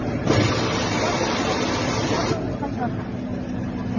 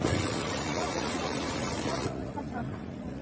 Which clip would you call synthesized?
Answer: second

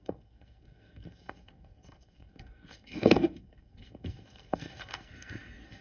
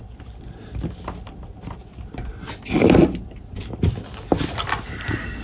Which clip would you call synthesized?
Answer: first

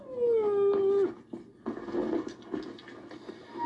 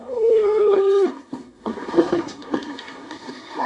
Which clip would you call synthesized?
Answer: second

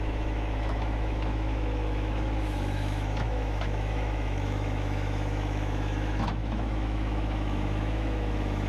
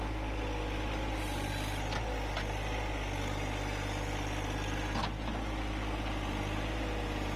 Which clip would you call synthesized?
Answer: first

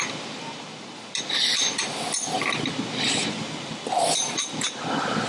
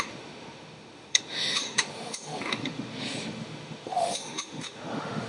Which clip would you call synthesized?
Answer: second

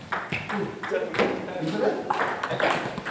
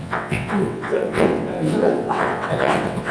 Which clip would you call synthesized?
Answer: second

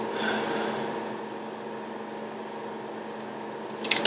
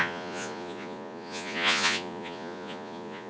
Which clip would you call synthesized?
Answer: second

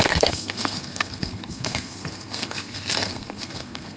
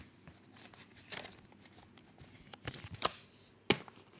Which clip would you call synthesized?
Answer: first